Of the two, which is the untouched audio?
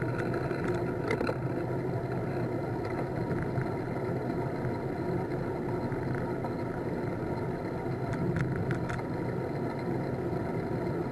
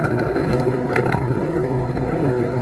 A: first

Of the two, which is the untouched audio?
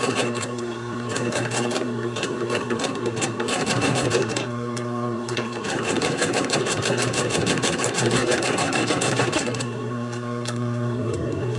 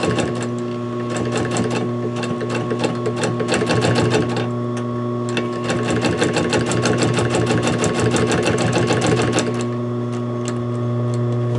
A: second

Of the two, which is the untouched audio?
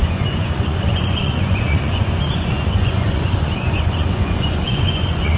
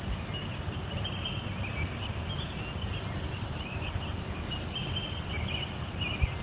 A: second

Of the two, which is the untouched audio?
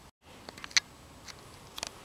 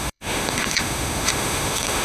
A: first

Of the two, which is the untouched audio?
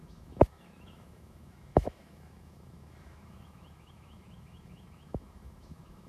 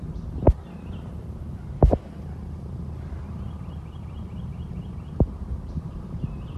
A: second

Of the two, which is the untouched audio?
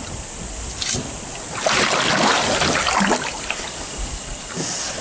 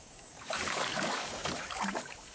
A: first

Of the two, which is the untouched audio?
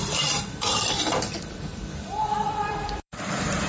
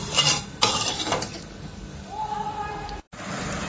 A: second